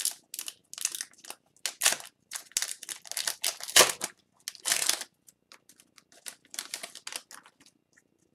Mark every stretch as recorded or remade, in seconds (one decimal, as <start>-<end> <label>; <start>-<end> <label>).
0.0-8.3 recorded